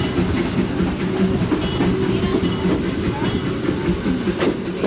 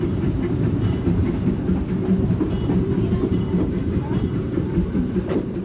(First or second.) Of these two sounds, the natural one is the first